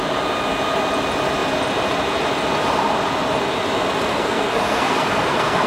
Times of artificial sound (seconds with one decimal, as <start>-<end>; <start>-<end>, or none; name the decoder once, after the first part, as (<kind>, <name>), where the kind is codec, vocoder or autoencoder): 4.1-5.7 (codec, SNAC)